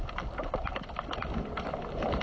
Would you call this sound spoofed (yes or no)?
no